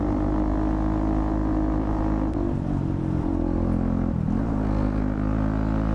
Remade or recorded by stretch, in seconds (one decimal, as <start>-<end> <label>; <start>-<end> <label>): 0.0-5.9 recorded